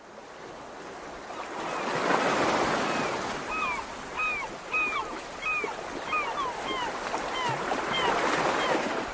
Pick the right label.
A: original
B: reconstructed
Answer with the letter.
A